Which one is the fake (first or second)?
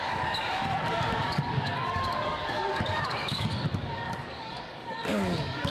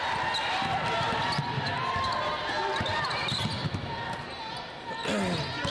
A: first